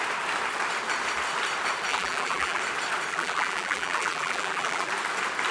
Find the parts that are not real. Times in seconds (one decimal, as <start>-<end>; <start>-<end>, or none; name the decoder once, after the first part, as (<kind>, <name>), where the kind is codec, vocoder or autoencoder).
1.9-2.6 (vocoder, BigVGAN v2); 3.1-4.9